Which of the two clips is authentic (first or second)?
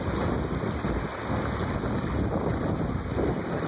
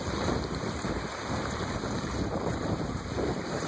first